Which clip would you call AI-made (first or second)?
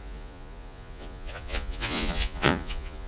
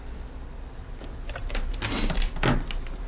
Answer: first